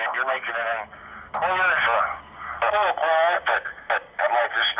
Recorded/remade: recorded